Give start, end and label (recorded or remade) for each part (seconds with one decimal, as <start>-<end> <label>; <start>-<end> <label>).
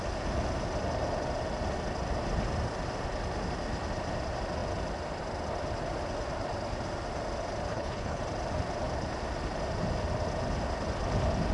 0.0-7.7 recorded; 7.7-8.2 remade; 8.2-11.5 recorded